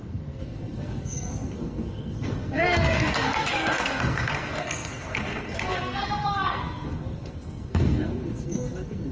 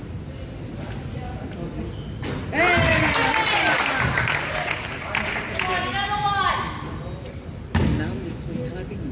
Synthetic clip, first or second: first